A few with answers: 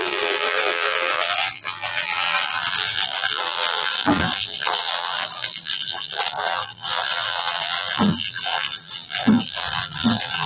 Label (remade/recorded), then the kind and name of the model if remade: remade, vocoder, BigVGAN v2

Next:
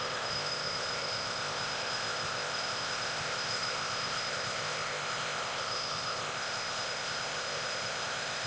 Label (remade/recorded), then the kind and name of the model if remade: remade, codec, ZipCodec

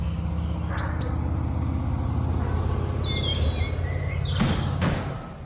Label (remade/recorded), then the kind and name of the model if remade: recorded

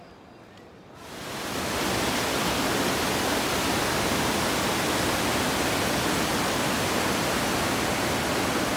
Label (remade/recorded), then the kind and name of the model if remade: recorded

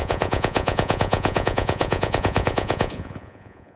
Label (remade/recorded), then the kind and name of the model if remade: remade, vocoder, Vocos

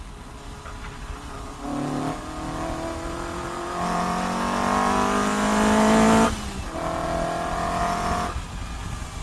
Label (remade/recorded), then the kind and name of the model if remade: recorded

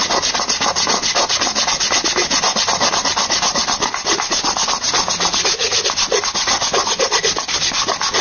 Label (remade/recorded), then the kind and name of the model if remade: recorded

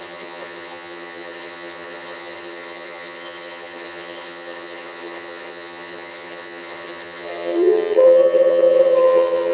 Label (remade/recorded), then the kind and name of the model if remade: remade, vocoder, HiFi-GAN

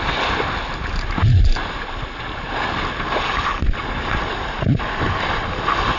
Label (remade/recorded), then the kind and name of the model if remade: recorded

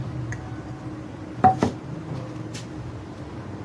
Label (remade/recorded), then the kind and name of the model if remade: recorded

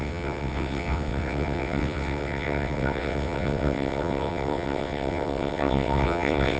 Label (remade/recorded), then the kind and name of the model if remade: remade, vocoder, WaveNeXt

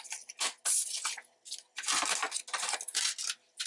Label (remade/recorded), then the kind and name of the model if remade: recorded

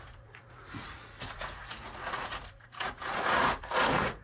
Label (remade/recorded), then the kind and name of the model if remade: remade, vocoder, Vocos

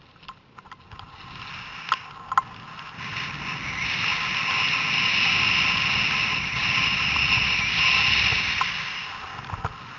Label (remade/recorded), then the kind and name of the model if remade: recorded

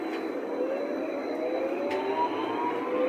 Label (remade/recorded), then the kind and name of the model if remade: recorded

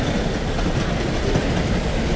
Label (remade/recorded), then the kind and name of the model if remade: recorded